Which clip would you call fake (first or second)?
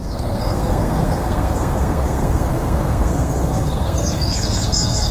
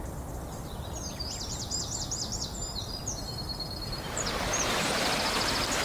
first